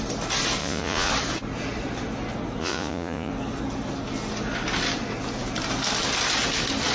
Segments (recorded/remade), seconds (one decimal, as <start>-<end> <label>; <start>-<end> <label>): 0.0-0.6 recorded; 0.6-1.1 remade; 1.1-2.6 recorded; 2.6-3.3 remade; 3.3-6.9 recorded

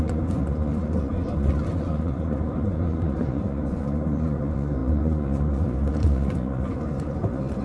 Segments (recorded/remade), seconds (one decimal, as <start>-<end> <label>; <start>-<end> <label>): 0.0-7.6 remade

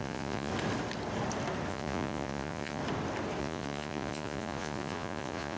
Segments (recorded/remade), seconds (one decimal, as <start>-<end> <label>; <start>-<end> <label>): 0.0-0.5 remade; 0.5-1.7 recorded; 1.7-2.8 remade; 2.8-3.4 recorded; 3.4-5.6 remade